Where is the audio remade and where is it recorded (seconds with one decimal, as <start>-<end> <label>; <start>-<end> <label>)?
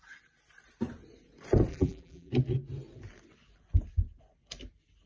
0.0-1.7 recorded; 1.7-2.3 remade; 2.3-5.1 recorded